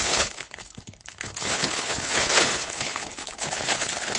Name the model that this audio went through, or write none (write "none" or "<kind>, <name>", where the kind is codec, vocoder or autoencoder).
codec, HILCodec